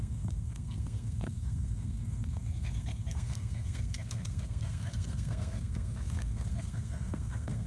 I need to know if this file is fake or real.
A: fake